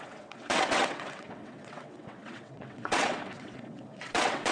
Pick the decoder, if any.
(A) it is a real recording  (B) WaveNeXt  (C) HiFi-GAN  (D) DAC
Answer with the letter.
B